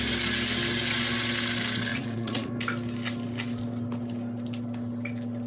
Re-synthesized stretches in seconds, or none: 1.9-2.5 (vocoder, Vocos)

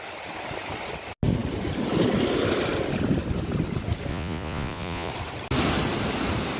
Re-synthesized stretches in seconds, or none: 4.1-5.1 (vocoder, Vocos)

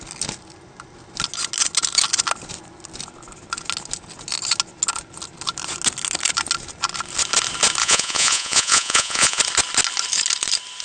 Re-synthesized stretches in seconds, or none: 7.8-9.4 (vocoder, Vocos)

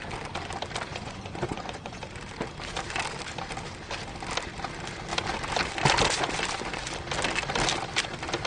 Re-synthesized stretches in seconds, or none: 0.9-2.0 (vocoder, Vocos)